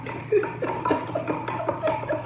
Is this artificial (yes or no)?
no